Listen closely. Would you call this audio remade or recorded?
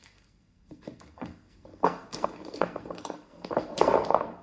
remade